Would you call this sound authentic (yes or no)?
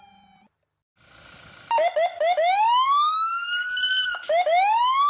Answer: yes